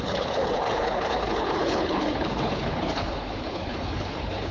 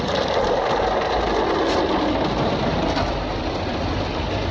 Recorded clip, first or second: second